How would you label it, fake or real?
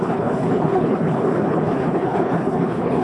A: fake